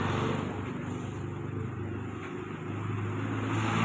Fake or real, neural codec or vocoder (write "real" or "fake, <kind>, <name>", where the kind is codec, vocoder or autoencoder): real